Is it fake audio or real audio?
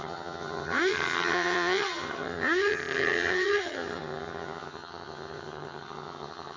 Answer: fake